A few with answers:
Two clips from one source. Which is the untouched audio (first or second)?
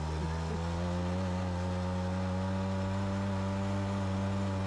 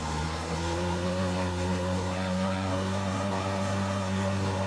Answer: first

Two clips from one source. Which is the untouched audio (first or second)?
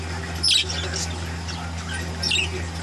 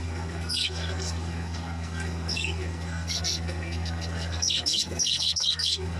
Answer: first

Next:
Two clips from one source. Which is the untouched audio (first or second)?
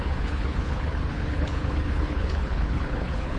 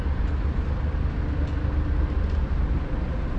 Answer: second